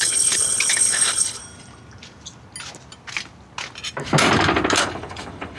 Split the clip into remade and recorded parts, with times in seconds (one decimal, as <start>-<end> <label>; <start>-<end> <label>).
0.0-1.4 remade; 1.4-4.8 recorded; 4.8-5.6 remade